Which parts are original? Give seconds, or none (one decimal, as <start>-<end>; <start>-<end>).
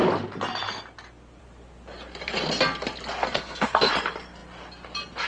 0.0-3.2; 3.9-5.3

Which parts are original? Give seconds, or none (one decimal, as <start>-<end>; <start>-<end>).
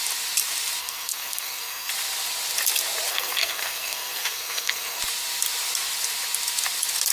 0.0-0.8; 1.9-3.1; 5.0-7.1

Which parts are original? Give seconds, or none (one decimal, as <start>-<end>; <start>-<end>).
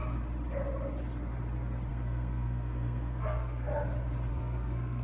0.0-1.9; 3.7-4.3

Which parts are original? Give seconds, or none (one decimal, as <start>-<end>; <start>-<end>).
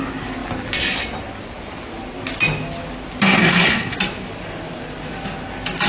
0.0-3.4; 4.0-5.9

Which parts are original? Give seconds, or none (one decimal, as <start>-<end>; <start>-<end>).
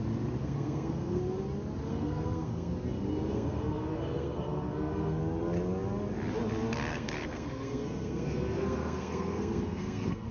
0.0-0.4; 1.2-1.9; 2.7-3.3; 5.2-6.9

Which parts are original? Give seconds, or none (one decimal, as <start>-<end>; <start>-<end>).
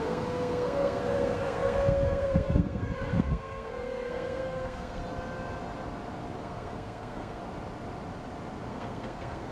5.0-6.4; 7.4-8.7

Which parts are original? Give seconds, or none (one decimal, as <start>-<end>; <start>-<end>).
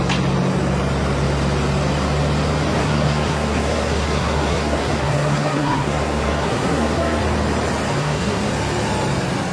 0.0-2.8; 7.2-8.0; 8.5-9.5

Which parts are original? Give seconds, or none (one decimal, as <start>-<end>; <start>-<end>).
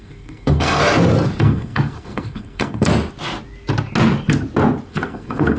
0.8-1.4; 2.9-4.9